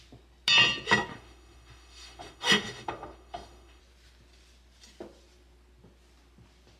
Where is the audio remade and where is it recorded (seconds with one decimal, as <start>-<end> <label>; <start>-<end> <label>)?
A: 0.0-1.1 recorded; 1.1-3.8 remade; 3.8-6.8 recorded